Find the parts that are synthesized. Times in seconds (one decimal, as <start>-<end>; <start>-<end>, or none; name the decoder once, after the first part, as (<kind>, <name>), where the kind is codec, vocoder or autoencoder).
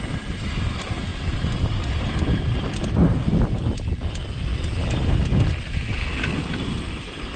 1.1-2.4 (vocoder, BigVGAN v2)